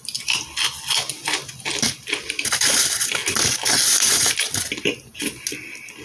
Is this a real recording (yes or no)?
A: yes